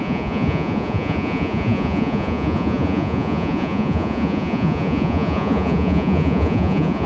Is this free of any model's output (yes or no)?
no